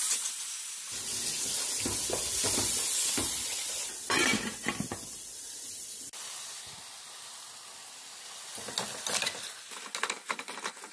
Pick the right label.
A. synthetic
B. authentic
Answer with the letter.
B